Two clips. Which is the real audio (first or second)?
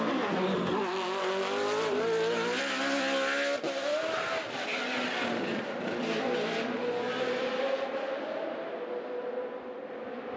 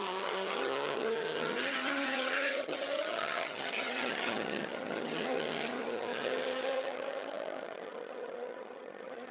first